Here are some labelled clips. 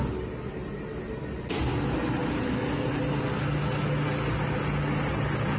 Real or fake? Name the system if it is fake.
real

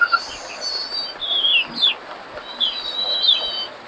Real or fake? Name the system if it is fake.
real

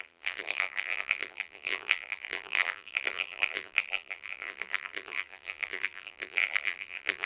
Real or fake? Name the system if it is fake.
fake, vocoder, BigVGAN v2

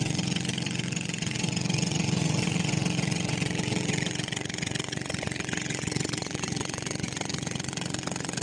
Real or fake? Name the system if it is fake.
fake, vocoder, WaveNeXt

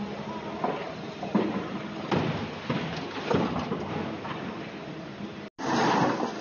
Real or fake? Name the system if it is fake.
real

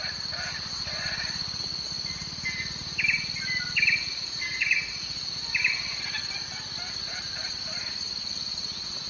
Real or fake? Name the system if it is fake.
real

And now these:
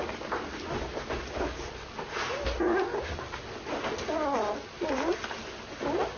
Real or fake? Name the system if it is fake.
real